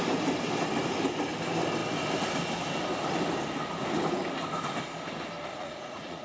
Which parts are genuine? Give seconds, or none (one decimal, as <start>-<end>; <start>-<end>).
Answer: 0.0-5.5